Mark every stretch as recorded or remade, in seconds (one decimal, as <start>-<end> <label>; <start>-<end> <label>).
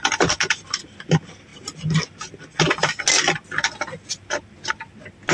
0.0-5.3 recorded